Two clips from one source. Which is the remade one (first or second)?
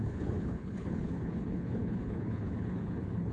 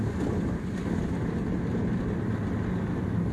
first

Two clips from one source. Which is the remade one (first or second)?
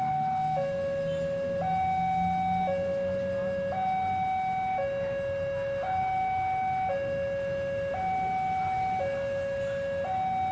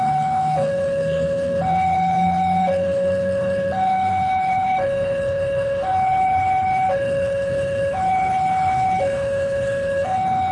second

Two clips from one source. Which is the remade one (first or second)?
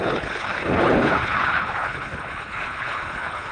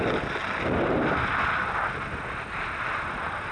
first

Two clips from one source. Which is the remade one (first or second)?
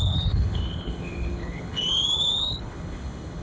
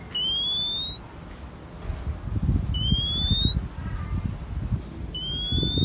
first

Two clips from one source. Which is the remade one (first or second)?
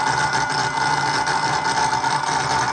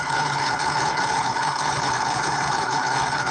second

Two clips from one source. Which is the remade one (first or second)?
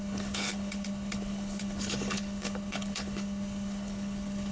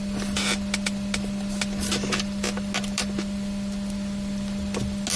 first